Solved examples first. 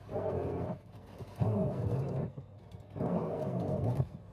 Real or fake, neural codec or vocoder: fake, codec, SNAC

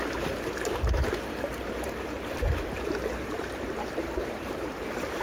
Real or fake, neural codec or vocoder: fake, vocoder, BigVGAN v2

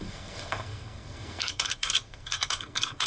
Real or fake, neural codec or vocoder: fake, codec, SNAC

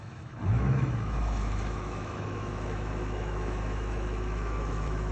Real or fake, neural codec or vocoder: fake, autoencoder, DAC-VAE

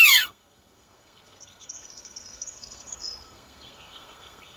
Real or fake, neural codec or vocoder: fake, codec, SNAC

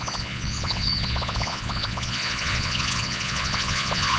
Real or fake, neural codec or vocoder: fake, vocoder, Vocos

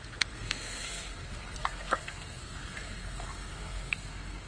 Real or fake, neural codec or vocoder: fake, codec, SNAC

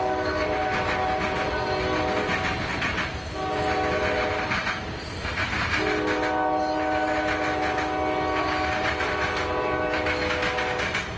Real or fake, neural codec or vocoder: real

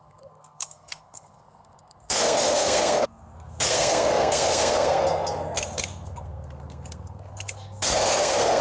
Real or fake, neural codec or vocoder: fake, codec, SNAC